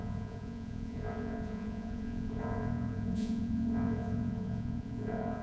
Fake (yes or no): yes